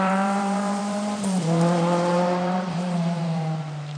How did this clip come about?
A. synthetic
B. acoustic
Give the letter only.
A